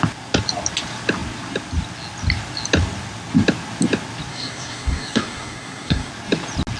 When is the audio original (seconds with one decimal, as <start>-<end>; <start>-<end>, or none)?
0.0-4.3; 6.1-6.8